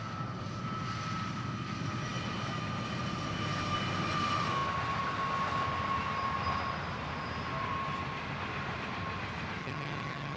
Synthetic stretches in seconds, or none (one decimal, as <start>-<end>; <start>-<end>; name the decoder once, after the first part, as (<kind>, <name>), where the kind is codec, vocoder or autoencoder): 9.6-10.4 (vocoder, HiFi-GAN)